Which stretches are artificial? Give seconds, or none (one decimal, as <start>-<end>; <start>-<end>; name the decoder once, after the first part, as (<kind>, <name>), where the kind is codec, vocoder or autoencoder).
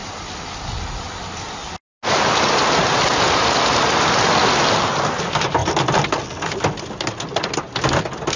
none